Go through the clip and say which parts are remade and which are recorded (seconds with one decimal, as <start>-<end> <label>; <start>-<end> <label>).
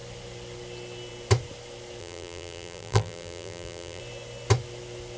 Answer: 0.0-2.0 recorded; 2.0-4.0 remade; 4.0-5.2 recorded